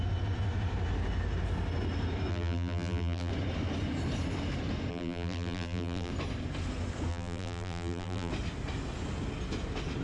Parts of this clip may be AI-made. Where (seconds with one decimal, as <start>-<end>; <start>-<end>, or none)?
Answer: 2.3-3.3; 4.9-6.1; 7.1-8.3